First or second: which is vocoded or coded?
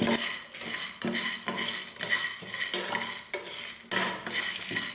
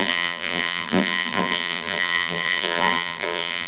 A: second